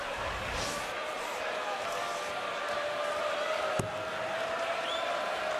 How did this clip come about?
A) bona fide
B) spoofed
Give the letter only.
A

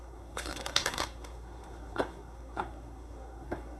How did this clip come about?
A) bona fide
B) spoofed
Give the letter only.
B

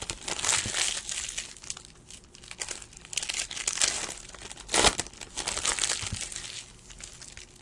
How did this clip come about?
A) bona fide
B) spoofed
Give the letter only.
A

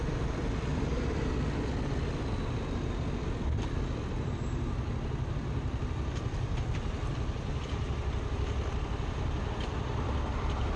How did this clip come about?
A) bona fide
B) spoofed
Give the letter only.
B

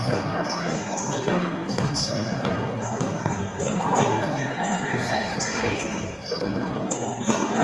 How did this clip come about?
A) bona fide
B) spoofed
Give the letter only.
B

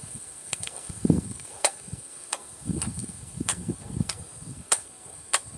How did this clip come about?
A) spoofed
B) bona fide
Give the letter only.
A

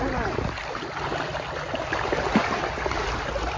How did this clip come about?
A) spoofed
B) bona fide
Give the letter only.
B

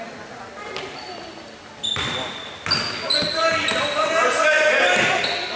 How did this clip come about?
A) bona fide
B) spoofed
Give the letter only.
A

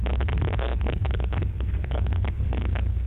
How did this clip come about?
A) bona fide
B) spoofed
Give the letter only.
B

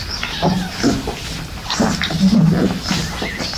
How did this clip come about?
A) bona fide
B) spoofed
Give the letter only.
A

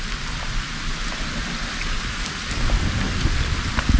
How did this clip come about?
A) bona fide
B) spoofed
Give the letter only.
A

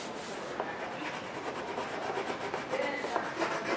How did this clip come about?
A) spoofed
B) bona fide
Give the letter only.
B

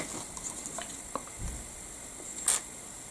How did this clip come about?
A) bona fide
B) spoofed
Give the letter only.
A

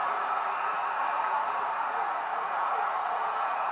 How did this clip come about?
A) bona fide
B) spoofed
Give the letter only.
B